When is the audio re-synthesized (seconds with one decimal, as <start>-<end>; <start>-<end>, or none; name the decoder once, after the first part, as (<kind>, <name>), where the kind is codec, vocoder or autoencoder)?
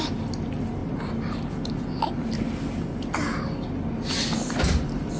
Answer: none